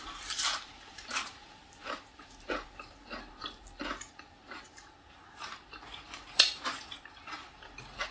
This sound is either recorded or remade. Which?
remade